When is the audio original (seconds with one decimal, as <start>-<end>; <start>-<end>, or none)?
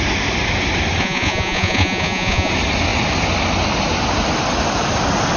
0.0-1.0; 2.5-5.4